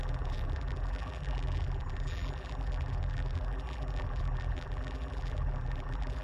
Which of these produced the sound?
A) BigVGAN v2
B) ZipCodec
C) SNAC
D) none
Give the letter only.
A